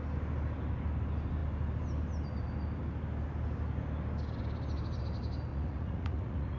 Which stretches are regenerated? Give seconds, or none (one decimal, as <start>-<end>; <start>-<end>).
5.5-6.6